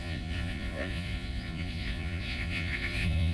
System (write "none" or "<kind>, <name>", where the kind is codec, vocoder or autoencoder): vocoder, Vocos